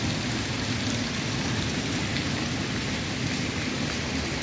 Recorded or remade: recorded